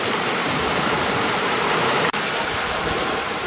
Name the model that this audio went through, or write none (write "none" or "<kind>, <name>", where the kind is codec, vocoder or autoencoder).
vocoder, BigVGAN v2